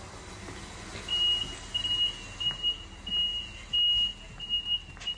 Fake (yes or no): no